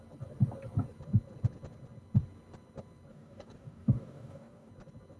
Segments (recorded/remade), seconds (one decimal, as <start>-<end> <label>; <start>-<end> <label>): 0.0-3.1 recorded; 3.1-4.7 remade; 4.7-5.2 recorded